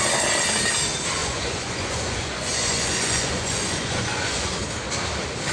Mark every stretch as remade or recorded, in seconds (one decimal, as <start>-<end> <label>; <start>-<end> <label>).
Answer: 0.0-1.2 recorded; 1.2-4.5 remade; 4.5-5.5 recorded